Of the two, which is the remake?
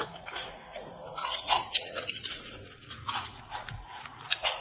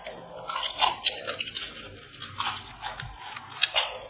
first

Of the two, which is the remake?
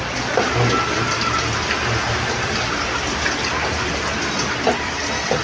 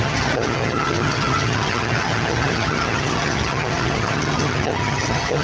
second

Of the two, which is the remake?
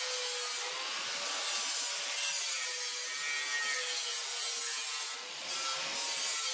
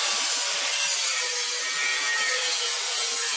second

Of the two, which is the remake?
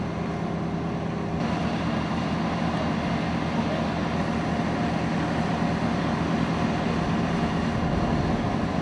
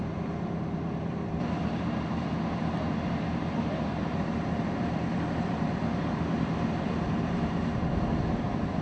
second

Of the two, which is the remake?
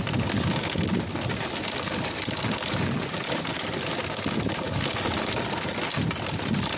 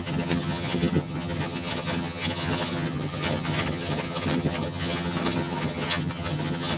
second